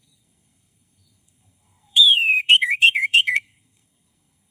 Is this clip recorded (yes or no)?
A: no